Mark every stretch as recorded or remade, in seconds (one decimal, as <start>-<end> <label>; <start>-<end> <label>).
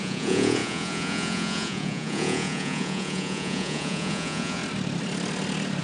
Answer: 0.0-4.6 remade; 4.6-5.8 recorded